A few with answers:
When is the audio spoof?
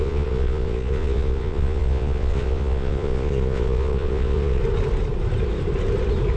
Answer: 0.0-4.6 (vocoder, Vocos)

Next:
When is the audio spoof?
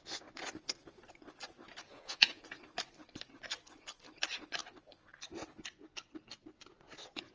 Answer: 1.9-2.4 (vocoder, Vocos)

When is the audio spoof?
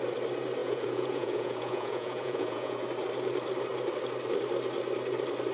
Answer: 0.6-2.8 (vocoder, Vocos)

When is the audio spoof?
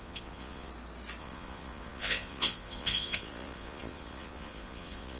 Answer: 0.0-0.7 (vocoder, Vocos); 1.2-5.2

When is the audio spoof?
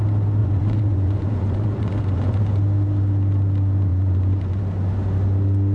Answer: 0.4-2.4 (vocoder, Vocos); 3.9-4.6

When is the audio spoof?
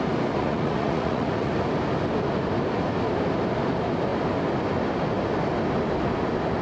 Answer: 0.4-1.5 (vocoder, Vocos)